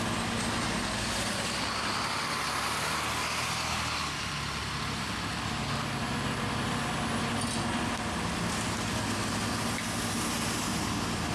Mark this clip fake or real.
real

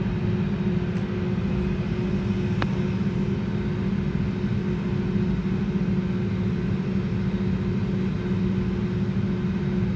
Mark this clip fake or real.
real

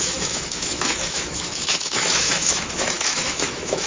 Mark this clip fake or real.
fake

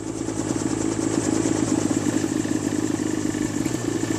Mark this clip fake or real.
fake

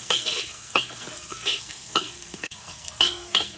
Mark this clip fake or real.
fake